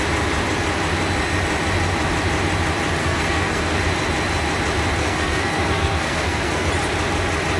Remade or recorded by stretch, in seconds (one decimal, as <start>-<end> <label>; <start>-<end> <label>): 0.0-3.0 recorded; 3.0-3.8 remade; 3.8-5.0 recorded; 5.0-6.7 remade; 6.7-7.6 recorded